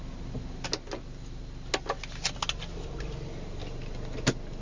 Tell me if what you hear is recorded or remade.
recorded